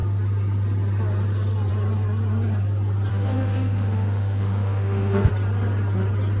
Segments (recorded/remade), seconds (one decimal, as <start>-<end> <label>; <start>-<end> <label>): 0.0-3.1 recorded; 3.1-5.3 remade; 5.3-6.4 recorded